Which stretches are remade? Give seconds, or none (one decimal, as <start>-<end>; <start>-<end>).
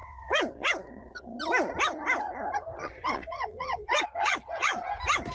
0.0-1.4; 2.7-4.8